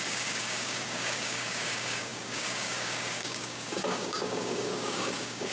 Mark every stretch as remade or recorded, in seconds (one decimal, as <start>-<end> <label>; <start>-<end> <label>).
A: 0.0-5.5 remade